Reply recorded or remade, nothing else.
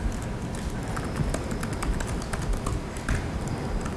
recorded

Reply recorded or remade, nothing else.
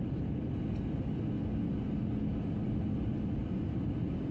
recorded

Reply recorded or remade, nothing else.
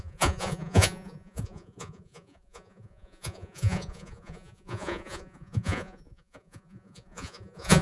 remade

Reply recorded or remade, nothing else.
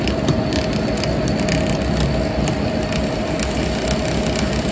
recorded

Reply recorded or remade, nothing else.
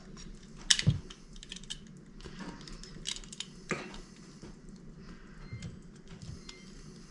recorded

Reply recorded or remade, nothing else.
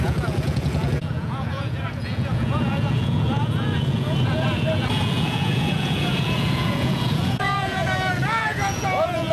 remade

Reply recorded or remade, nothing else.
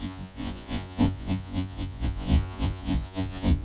remade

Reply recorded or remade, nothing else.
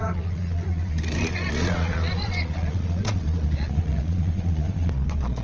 remade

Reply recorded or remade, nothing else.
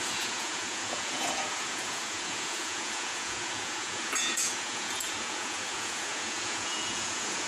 remade